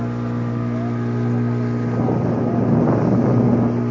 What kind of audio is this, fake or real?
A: real